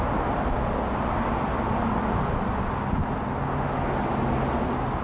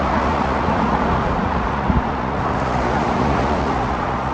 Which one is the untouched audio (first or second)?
first